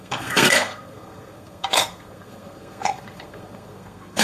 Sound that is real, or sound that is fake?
fake